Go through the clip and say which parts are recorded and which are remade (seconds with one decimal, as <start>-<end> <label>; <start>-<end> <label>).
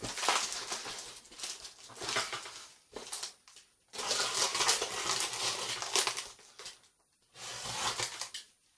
0.0-8.8 recorded